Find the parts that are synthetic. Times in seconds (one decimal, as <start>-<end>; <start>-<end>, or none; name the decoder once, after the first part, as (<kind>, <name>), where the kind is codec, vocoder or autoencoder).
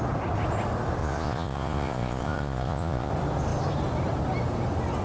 1.0-3.1 (vocoder, Vocos)